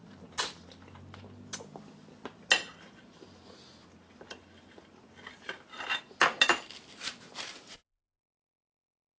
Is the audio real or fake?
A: real